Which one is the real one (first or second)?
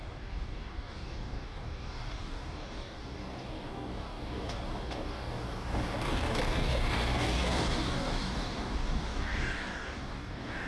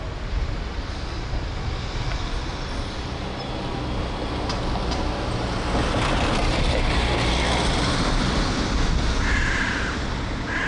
second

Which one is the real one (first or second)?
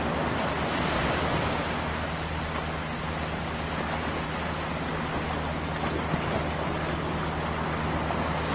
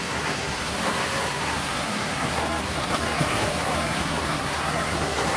first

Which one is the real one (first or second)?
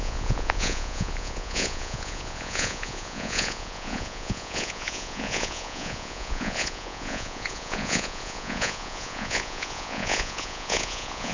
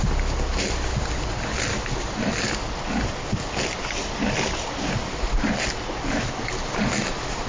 second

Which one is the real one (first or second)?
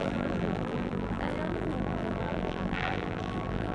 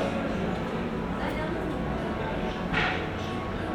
second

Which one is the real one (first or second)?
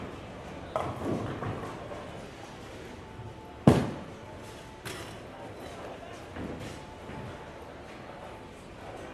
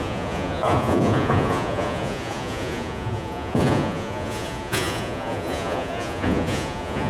first